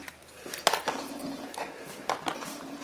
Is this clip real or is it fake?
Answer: real